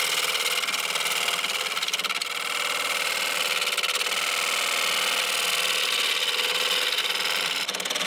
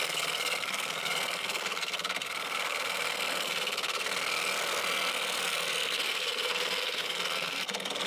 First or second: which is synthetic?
second